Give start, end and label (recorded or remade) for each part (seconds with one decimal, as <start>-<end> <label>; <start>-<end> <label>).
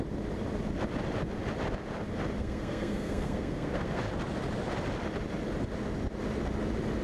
0.0-2.4 recorded; 2.4-4.0 remade; 4.0-7.0 recorded